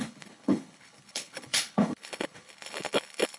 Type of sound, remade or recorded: remade